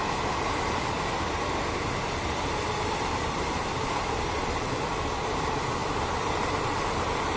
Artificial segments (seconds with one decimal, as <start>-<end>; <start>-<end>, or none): none